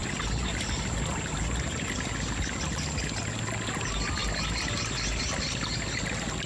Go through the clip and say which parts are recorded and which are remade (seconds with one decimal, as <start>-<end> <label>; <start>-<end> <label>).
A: 0.0-0.6 remade; 0.6-6.5 recorded